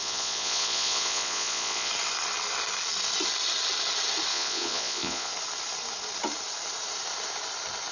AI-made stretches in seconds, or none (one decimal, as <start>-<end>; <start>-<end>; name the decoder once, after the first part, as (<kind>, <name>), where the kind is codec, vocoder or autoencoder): 0.0-1.9 (vocoder, Vocos); 4.3-5.3